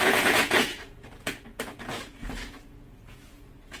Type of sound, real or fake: fake